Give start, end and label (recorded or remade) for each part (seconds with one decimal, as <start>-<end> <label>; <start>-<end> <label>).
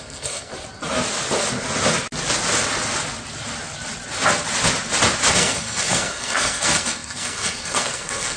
0.0-0.5 remade; 0.5-5.3 recorded; 5.3-8.4 remade